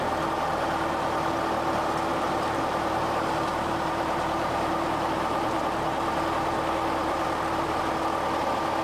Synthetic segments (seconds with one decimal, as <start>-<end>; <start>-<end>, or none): 2.1-6.1; 7.0-7.8